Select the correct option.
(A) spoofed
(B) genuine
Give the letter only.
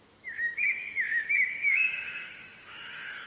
A